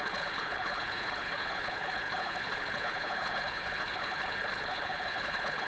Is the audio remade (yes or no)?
yes